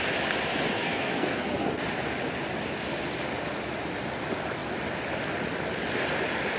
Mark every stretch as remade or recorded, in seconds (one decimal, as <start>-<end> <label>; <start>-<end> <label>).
0.0-0.7 recorded; 0.7-1.8 remade; 1.8-6.6 recorded